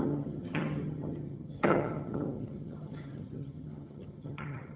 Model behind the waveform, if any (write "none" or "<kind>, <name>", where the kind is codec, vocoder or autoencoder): vocoder, HiFi-GAN